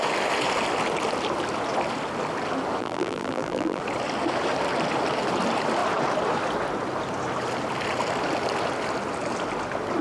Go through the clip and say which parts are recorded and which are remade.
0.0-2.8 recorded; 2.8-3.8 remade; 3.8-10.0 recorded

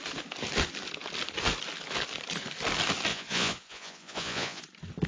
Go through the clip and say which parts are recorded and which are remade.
0.0-3.1 recorded; 3.1-4.6 remade; 4.6-5.1 recorded

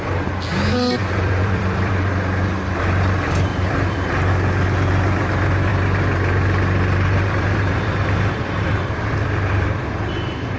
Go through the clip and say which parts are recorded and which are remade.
0.0-1.0 recorded; 1.0-1.9 remade; 1.9-3.5 recorded; 3.5-4.1 remade; 4.1-5.7 recorded; 5.7-9.1 remade; 9.1-10.6 recorded

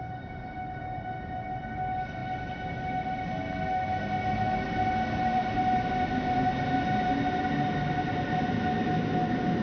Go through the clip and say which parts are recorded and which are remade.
0.0-9.6 recorded

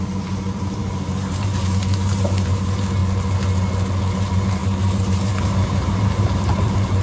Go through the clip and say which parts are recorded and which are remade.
0.0-3.0 remade; 3.0-4.0 recorded; 4.0-7.0 remade

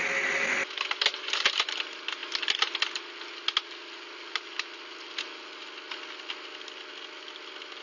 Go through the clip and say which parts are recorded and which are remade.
0.0-7.8 recorded

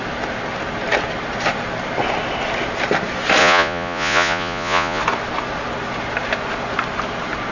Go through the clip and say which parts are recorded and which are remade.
0.0-3.4 recorded; 3.4-5.0 remade; 5.0-7.5 recorded

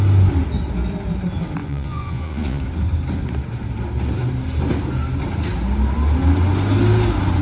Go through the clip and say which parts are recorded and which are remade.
0.0-1.6 recorded; 1.6-2.6 remade; 2.6-7.4 recorded